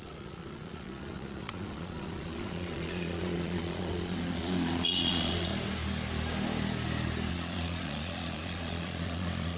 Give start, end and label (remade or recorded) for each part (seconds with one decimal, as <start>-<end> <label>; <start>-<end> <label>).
0.0-5.5 remade; 5.5-7.3 recorded; 7.3-9.6 remade